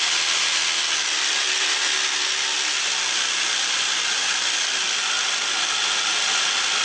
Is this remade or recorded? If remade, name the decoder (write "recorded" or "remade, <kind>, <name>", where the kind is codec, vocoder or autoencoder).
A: recorded